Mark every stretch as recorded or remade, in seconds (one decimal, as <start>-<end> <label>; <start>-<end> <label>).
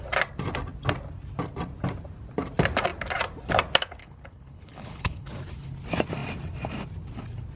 0.0-4.0 recorded; 4.0-5.3 remade; 5.3-7.6 recorded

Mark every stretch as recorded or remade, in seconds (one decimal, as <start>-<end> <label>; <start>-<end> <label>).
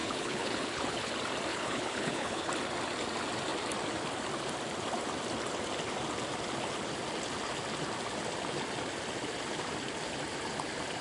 0.0-1.1 remade; 1.1-1.5 recorded; 1.5-2.5 remade; 2.5-11.0 recorded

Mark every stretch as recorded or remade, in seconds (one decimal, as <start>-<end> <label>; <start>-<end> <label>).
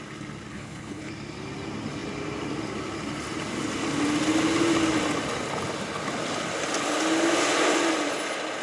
0.0-0.5 recorded; 0.5-1.1 remade; 1.1-8.6 recorded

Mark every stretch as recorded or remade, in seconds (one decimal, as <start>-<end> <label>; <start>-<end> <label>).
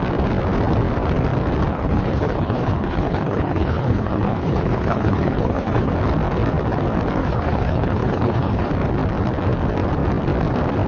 0.0-1.7 recorded; 1.7-5.9 remade; 5.9-7.2 recorded; 7.2-8.7 remade; 8.7-10.9 recorded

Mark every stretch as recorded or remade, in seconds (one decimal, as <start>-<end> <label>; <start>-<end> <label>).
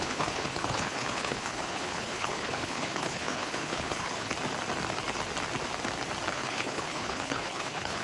0.0-4.3 remade; 4.3-6.3 recorded; 6.3-8.0 remade